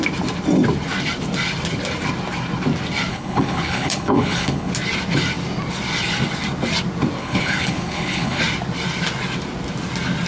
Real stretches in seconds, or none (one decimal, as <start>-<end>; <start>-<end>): 0.0-3.1; 4.7-7.2; 8.4-10.3